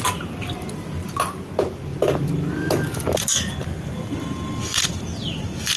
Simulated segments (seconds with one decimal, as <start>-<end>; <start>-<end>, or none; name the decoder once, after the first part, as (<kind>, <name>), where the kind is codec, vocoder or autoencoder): none